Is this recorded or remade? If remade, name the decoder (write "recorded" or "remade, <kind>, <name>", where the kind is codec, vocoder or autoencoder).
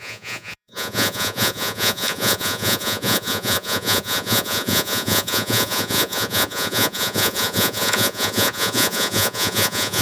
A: remade, vocoder, Vocos